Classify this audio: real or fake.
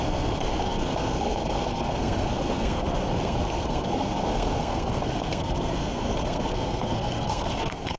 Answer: fake